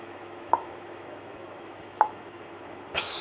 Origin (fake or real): fake